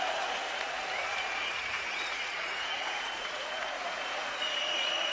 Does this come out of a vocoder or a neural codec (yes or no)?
yes